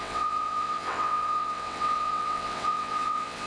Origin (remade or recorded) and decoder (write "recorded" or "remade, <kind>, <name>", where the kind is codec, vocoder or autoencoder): remade, vocoder, WaveNeXt